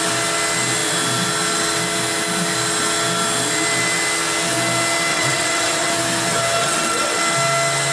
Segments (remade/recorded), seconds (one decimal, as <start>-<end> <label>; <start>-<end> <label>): 0.0-5.1 recorded; 5.1-5.9 remade; 5.9-6.6 recorded; 6.6-7.2 remade; 7.2-7.9 recorded